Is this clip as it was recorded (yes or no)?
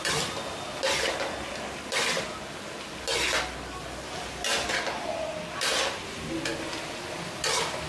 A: yes